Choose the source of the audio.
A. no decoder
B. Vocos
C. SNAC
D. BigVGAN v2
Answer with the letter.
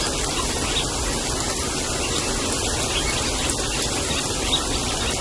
A